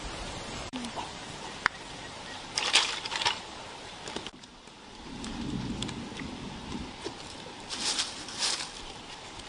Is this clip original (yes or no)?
no